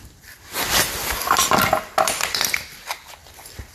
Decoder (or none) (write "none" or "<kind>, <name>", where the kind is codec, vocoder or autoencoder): vocoder, BigVGAN v2